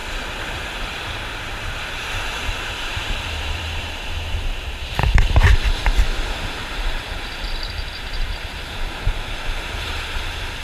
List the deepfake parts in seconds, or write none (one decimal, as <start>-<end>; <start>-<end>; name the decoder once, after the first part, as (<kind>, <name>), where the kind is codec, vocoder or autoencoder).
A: 1.9-10.6 (vocoder, BigVGAN v2)